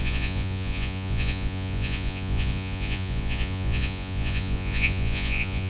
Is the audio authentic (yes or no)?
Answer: no